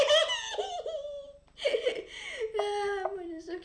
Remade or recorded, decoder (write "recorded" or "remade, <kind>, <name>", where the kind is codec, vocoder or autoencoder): recorded